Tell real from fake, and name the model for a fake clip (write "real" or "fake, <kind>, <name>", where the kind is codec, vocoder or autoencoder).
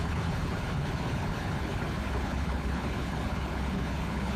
fake, codec, HILCodec